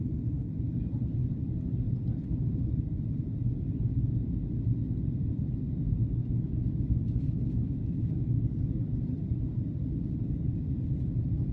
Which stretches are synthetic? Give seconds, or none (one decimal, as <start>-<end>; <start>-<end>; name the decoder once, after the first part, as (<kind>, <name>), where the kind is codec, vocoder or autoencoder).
6.2-8.4 (autoencoder, DAC-VAE)